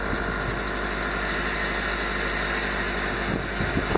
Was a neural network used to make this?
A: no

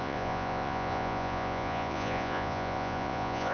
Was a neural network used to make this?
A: yes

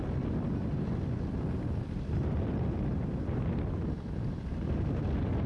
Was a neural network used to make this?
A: no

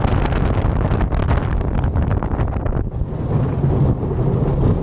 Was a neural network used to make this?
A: no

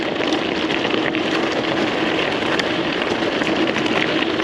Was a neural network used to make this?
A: no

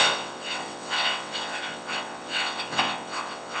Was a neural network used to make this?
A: yes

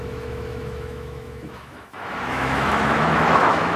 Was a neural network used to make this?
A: yes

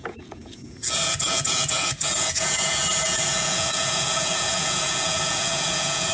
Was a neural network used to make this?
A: yes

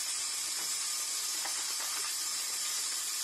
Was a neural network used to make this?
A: no